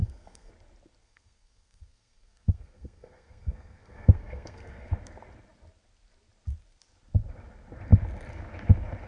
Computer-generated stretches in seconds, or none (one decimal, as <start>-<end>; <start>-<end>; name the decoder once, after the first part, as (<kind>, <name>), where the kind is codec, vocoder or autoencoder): 0.0-0.5 (codec, SNAC); 1.0-4.9